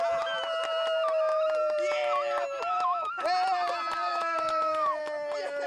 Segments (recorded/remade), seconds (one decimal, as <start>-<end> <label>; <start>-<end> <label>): 0.0-4.1 recorded; 4.1-5.0 remade; 5.0-5.7 recorded